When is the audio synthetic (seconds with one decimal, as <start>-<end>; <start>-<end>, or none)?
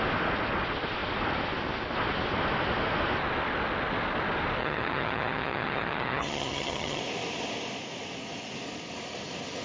4.6-7.0